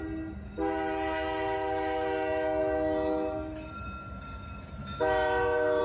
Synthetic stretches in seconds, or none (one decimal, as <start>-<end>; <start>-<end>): 4.8-5.8